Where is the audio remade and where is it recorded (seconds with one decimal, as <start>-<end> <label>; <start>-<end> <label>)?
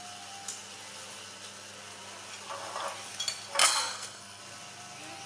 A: 0.0-3.6 recorded; 3.6-4.4 remade; 4.4-5.3 recorded